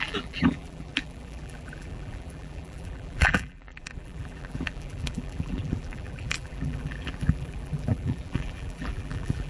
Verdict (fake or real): fake